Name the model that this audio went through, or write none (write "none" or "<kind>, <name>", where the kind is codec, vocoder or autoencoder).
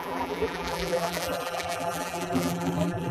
vocoder, BigVGAN v2